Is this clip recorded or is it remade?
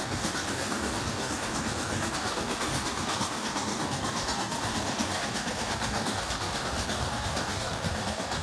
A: remade